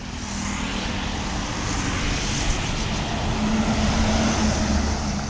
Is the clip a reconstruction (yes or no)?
no